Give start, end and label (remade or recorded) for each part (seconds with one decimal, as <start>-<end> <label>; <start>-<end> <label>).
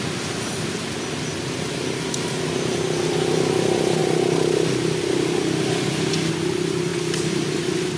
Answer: 0.0-6.9 recorded; 6.9-8.0 remade